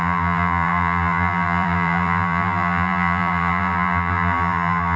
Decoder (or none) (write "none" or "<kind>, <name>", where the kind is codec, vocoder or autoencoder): vocoder, BigVGAN v2